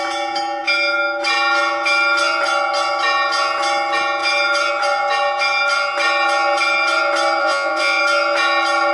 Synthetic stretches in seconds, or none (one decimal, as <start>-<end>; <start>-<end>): 7.4-8.0